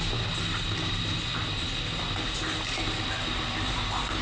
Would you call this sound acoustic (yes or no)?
yes